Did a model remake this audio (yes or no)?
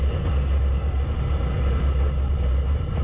no